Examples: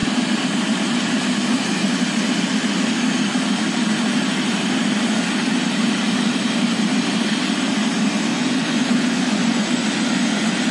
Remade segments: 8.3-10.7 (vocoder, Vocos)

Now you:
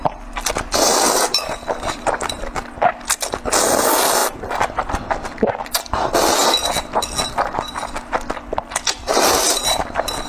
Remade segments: 9.1-9.8 (vocoder, BigVGAN v2)

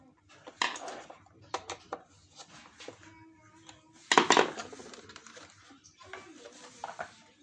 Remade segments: none

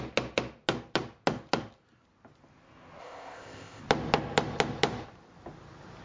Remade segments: 3.0-3.8 (codec, ZipCodec)

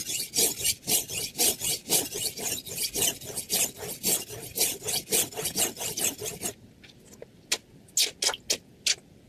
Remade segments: none